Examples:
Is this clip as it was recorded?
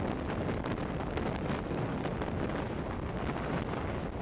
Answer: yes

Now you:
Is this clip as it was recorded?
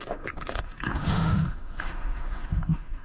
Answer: no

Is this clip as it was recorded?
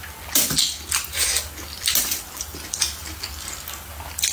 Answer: yes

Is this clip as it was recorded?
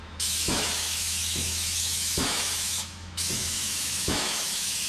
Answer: no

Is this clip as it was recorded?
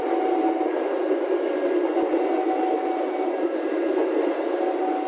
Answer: yes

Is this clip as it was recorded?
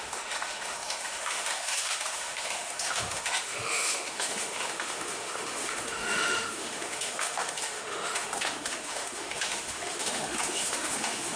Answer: no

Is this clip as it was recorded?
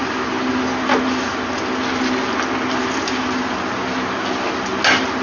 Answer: yes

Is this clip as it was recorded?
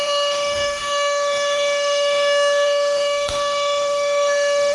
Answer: no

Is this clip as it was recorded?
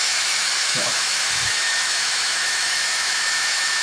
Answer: no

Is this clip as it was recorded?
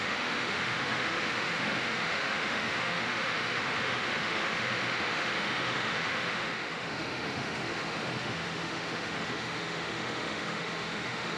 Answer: no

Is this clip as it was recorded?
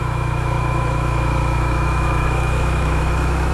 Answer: no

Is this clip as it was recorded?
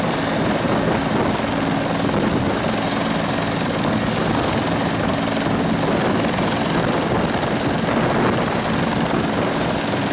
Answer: yes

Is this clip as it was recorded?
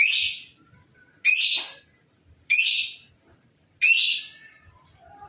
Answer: yes